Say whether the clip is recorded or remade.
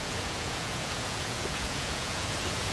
remade